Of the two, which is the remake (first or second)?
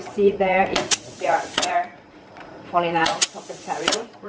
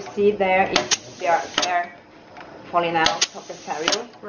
first